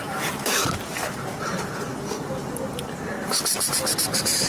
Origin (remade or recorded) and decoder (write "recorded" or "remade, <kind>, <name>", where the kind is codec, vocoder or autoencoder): recorded